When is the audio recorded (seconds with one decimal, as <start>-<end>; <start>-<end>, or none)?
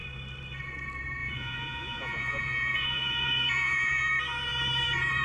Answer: 0.0-1.2; 4.1-5.2